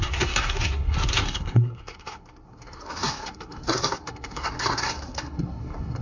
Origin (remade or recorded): remade